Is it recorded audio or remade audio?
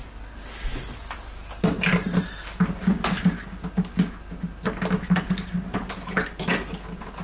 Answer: recorded